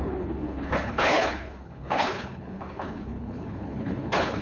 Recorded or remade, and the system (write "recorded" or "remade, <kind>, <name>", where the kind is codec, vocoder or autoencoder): remade, codec, HILCodec